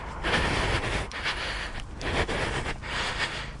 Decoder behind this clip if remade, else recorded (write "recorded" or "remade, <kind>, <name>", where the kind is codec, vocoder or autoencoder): recorded